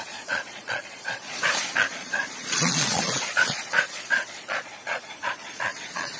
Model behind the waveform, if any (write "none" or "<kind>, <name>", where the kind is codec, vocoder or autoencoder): vocoder, Vocos